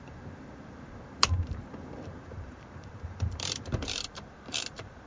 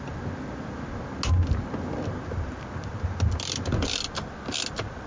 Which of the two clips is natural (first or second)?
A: second